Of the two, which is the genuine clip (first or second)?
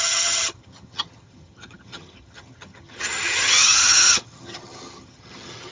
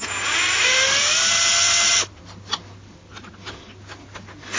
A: second